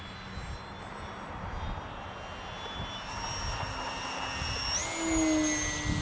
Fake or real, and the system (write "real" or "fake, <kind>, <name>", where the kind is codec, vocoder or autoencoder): real